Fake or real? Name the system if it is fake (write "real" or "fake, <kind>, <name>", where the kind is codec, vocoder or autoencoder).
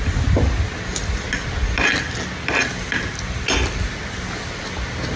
real